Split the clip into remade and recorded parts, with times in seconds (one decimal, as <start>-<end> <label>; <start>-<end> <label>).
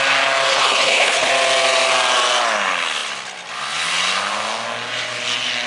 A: 0.0-0.5 recorded; 0.5-1.3 remade; 1.3-5.7 recorded